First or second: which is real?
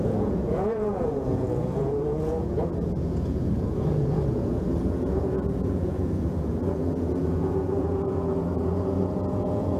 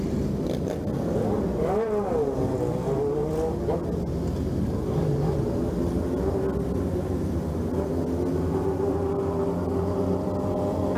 second